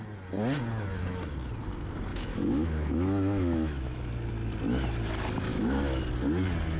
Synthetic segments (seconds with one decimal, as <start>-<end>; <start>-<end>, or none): 2.1-4.1; 5.5-6.0